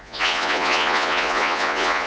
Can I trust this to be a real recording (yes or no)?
no